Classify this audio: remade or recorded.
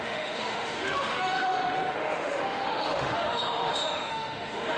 remade